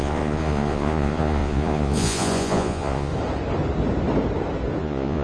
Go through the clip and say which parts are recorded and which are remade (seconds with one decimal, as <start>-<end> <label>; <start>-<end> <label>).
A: 0.0-3.1 remade; 3.1-4.8 recorded; 4.8-5.2 remade